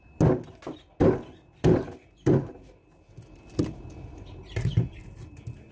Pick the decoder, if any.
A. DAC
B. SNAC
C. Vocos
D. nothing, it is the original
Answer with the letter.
D